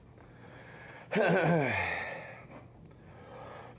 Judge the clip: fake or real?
real